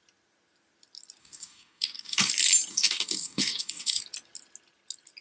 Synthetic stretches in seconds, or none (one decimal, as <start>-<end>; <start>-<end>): 1.2-2.3; 2.7-4.0